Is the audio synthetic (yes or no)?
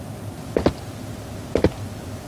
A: no